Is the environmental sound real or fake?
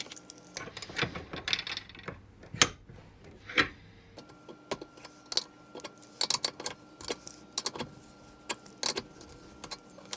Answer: real